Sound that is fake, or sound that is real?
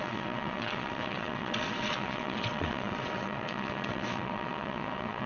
fake